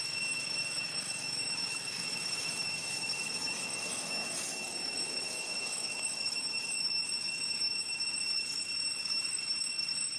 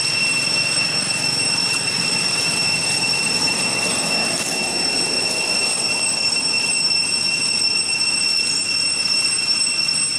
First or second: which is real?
second